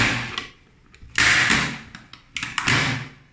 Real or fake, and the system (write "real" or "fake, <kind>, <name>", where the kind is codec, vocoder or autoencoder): real